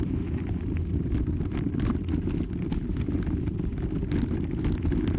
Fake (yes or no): no